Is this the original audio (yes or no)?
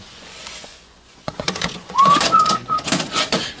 no